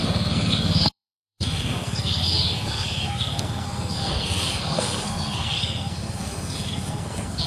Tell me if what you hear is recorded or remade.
remade